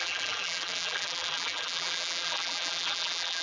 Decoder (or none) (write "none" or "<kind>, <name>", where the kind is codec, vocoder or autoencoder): vocoder, BigVGAN v2